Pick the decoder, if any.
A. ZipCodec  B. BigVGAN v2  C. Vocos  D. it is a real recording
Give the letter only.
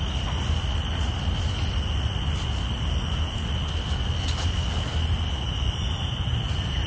D